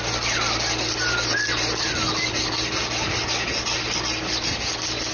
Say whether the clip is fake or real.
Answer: real